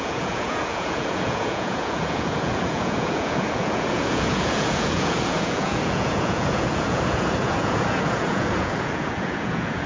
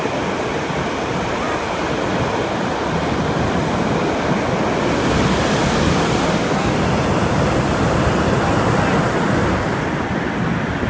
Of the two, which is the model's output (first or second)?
first